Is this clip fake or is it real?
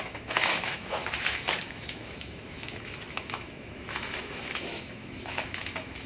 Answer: fake